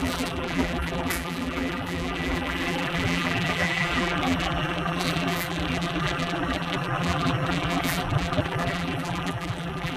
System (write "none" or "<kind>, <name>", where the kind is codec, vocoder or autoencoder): vocoder, BigVGAN v2